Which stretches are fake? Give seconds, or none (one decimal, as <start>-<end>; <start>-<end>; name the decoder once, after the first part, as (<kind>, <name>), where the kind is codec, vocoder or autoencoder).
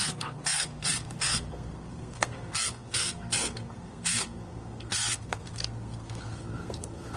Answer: 0.0-7.2 (codec, SNAC)